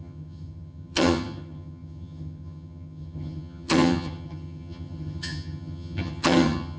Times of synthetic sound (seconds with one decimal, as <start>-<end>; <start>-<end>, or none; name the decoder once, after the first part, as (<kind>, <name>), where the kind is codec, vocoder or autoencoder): 0.0-6.8 (vocoder, HiFi-GAN)